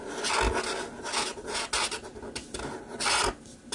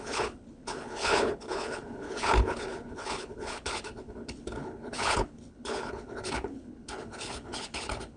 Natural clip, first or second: first